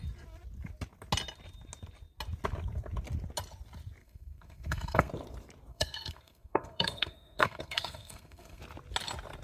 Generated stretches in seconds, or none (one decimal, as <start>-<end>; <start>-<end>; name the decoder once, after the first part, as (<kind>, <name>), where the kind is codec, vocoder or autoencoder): 4.0-5.1 (codec, SNAC); 5.7-8.6